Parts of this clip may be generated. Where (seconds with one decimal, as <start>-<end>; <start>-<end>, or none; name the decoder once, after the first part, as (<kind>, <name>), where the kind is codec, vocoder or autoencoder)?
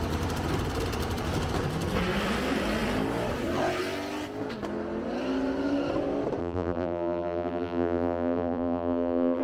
6.4-9.4 (vocoder, BigVGAN v2)